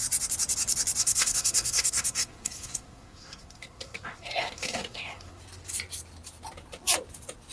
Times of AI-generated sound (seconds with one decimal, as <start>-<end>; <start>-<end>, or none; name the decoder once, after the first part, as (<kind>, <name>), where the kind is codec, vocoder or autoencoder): 1.0-5.4 (codec, SNAC)